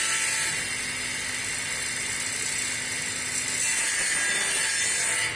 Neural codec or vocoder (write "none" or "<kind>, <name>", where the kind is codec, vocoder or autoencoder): none